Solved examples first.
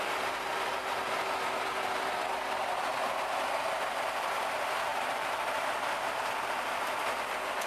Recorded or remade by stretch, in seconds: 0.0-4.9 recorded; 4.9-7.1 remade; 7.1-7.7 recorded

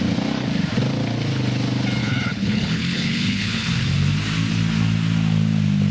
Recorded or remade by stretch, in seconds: 0.0-2.0 recorded; 2.0-3.7 remade; 3.7-5.9 recorded

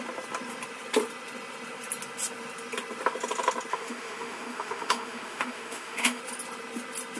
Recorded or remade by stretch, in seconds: 0.0-3.7 recorded; 3.7-6.2 remade; 6.2-7.2 recorded

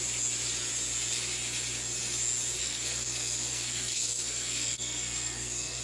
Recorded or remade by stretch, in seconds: 0.0-2.6 recorded; 2.6-5.8 remade

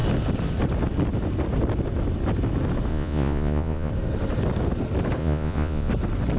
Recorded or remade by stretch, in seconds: 0.0-2.9 recorded; 2.9-3.9 remade; 3.9-5.2 recorded; 5.2-5.9 remade; 5.9-6.4 recorded